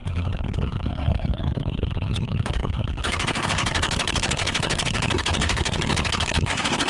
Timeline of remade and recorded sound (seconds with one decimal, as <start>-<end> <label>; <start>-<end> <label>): 0.0-6.9 remade